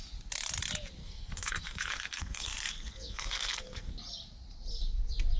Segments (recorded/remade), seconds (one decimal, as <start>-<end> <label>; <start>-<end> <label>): 0.0-1.0 recorded; 1.0-3.9 remade; 3.9-5.4 recorded